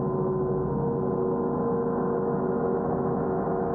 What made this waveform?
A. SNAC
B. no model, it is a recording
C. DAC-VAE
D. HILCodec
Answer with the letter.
B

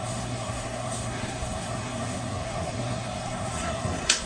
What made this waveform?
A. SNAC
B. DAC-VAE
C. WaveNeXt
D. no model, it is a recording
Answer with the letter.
A